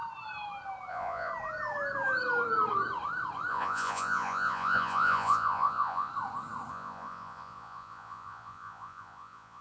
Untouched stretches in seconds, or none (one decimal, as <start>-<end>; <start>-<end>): 0.0-0.9; 1.3-3.5; 6.1-6.7